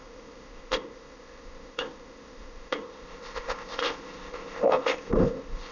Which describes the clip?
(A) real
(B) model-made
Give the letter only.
B